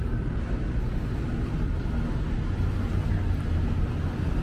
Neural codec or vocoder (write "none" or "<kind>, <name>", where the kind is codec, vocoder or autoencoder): none